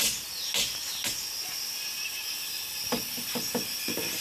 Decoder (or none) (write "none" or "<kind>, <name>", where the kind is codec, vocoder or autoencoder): none